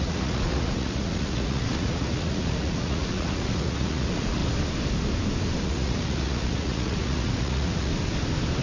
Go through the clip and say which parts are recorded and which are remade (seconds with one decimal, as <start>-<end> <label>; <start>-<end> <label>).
0.0-4.4 remade; 4.4-5.6 recorded; 5.6-7.9 remade; 7.9-8.6 recorded